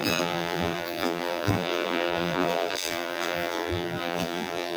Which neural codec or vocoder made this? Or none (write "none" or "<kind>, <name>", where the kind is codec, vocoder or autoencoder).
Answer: vocoder, BigVGAN v2